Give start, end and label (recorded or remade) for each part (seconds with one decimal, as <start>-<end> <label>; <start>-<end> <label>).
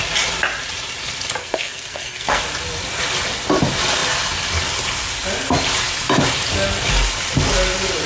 0.0-1.4 recorded; 1.4-2.4 remade; 2.4-8.1 recorded